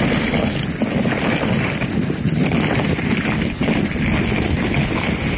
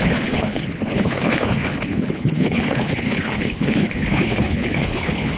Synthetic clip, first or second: second